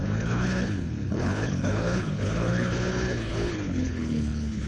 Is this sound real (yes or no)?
no